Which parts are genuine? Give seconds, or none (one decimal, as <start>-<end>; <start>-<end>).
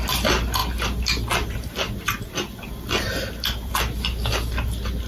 0.0-5.1